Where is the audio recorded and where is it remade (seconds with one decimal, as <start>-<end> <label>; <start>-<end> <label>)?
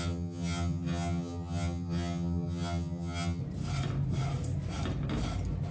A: 0.0-3.4 remade; 3.4-5.7 recorded